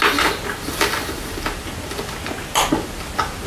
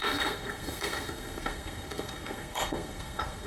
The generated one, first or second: second